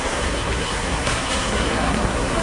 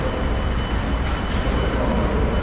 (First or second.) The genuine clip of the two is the second